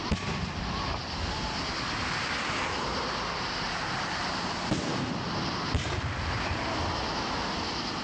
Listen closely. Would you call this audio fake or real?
real